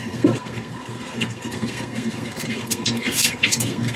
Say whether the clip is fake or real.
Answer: fake